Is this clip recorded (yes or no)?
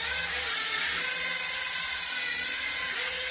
yes